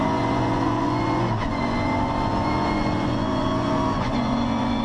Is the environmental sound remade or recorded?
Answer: remade